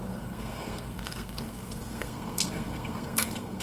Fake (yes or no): yes